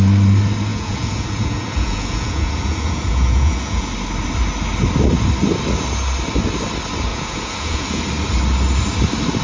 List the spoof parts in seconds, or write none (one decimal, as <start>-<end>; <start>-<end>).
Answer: 0.7-3.9; 7.1-8.0